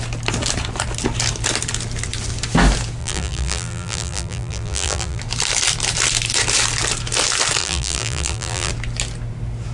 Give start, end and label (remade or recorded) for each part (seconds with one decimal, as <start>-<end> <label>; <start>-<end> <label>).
0.0-3.0 recorded; 3.0-5.2 remade; 5.2-7.6 recorded; 7.6-8.7 remade; 8.7-9.7 recorded